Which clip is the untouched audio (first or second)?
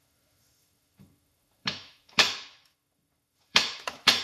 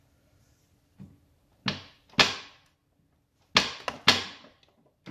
second